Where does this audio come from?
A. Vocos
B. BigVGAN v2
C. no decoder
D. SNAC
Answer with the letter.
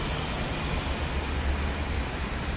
C